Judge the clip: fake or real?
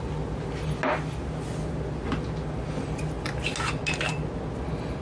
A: real